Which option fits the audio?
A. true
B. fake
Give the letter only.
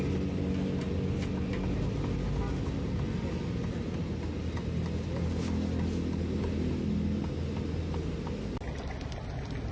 A